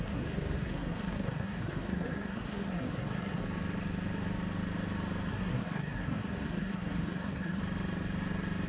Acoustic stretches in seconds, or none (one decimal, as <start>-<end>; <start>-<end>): 3.4-5.3; 7.6-8.7